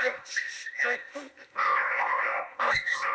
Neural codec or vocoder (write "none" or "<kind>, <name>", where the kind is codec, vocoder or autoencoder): codec, ZipCodec